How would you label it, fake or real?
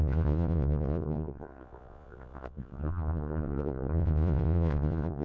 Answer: fake